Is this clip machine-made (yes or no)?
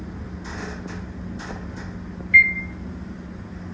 no